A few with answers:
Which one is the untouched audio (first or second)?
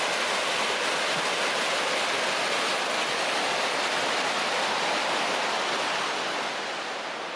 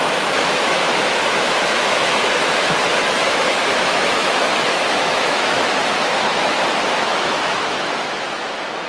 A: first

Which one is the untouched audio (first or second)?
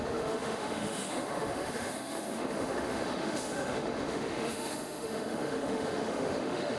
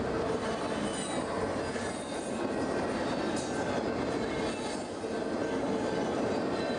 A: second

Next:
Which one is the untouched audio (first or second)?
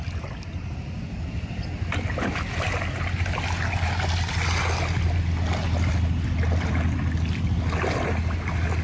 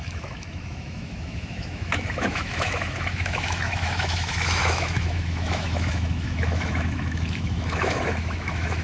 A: first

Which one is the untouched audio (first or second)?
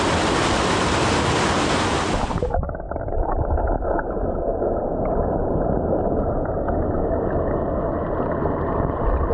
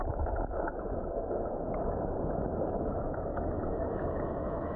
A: first